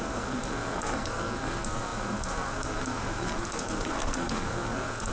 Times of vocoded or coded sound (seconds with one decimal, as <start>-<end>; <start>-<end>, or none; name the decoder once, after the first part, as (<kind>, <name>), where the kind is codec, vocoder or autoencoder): 0.0-5.1 (codec, SNAC)